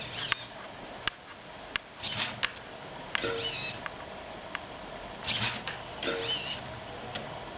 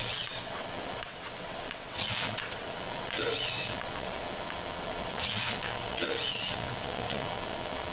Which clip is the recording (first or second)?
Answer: first